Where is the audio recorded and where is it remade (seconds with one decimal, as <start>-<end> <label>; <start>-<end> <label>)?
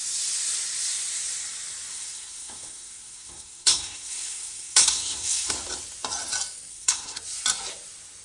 0.0-1.9 recorded; 1.9-5.5 remade; 5.5-6.7 recorded; 6.7-7.2 remade; 7.2-8.2 recorded